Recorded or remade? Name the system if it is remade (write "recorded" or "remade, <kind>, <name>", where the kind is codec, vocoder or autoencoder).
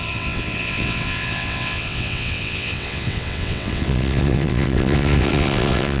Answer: remade, vocoder, WaveNeXt